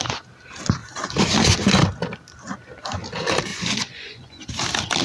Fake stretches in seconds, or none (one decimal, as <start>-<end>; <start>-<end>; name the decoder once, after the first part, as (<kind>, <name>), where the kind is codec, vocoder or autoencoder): 3.5-4.5 (vocoder, Vocos)

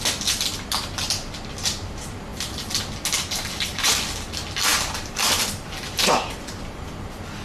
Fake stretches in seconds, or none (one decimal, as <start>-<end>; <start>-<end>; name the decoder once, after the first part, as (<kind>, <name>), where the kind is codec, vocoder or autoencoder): none

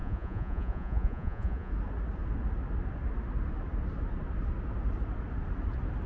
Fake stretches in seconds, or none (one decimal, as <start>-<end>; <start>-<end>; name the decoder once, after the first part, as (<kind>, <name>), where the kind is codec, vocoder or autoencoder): 0.0-1.7 (vocoder, Vocos)

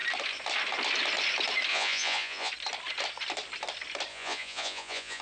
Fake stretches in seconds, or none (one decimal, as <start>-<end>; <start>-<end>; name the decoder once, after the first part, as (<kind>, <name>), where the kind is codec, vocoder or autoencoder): 1.7-2.5 (vocoder, Vocos); 4.1-5.2

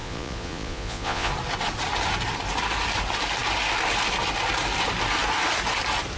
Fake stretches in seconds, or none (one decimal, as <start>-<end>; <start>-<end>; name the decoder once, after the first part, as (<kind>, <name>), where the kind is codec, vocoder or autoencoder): 0.0-1.3 (vocoder, Vocos)

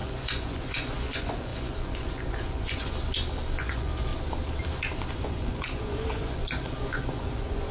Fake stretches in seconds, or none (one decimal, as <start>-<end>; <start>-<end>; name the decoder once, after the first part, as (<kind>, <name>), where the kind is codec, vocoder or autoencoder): 0.0-2.9 (vocoder, Vocos); 3.6-4.1; 5.1-7.7

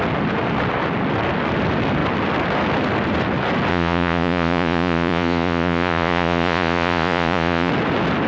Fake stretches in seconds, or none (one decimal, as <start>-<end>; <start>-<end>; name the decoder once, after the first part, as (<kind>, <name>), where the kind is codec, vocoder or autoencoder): 3.7-7.7 (vocoder, Vocos)